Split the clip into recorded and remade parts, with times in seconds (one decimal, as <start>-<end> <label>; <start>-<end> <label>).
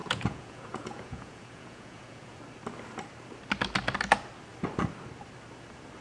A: 0.0-2.4 remade; 2.4-6.0 recorded